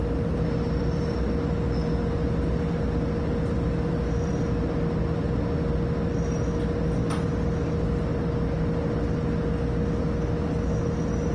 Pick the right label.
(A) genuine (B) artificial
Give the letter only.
A